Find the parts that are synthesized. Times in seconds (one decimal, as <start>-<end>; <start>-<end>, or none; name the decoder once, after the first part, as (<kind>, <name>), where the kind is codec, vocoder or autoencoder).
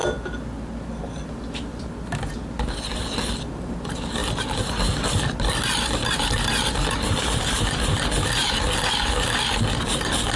none